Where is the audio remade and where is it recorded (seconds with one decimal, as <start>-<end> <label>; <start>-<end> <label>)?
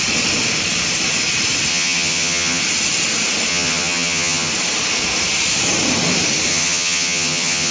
0.0-1.7 recorded; 1.7-2.6 remade; 2.6-3.5 recorded; 3.5-4.5 remade; 4.5-6.5 recorded; 6.5-7.7 remade